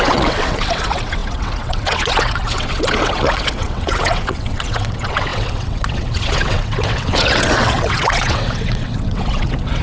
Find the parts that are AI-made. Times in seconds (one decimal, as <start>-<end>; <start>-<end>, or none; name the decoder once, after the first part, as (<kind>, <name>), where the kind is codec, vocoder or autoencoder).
0.0-9.8 (vocoder, WaveNeXt)